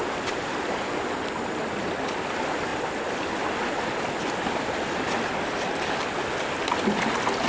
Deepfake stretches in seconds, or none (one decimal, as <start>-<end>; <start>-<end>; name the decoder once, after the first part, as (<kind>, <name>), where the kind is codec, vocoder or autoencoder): none